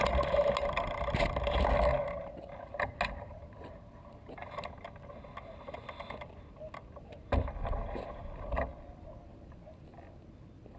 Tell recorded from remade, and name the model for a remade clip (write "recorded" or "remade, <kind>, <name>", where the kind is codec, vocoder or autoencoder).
recorded